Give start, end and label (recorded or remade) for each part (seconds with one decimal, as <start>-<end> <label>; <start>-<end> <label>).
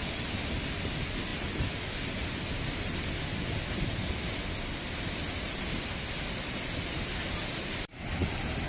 0.0-8.7 recorded